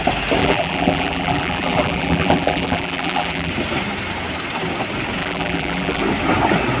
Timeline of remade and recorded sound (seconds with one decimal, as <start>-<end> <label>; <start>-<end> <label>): 0.0-0.4 recorded; 0.4-3.5 remade; 3.5-5.2 recorded; 5.2-6.0 remade; 6.0-6.8 recorded